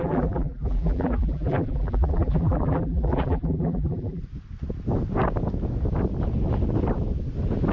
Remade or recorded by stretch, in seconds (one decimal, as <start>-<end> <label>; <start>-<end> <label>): 0.0-4.2 remade; 4.2-7.7 recorded